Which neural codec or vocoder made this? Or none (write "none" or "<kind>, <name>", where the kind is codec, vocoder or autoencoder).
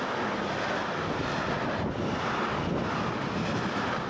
none